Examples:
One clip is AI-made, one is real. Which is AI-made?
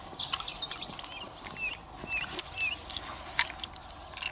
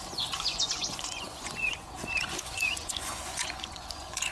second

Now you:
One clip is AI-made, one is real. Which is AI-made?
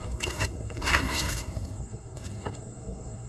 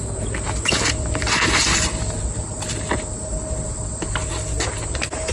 first